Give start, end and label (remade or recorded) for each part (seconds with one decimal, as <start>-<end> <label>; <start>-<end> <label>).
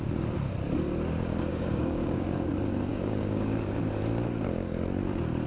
0.0-1.5 recorded; 1.5-2.5 remade; 2.5-2.9 recorded; 2.9-3.8 remade; 3.8-5.5 recorded